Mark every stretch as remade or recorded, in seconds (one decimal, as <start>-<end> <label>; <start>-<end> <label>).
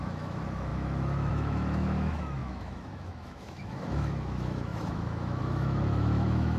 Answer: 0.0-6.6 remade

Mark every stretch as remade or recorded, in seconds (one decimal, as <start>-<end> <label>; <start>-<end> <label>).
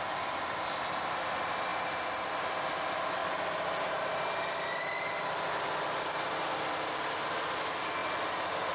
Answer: 0.0-8.7 recorded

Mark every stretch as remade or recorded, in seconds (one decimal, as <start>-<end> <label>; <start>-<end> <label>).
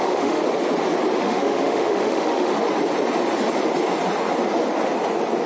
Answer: 0.0-0.4 remade; 0.4-1.2 recorded; 1.2-2.5 remade; 2.5-5.5 recorded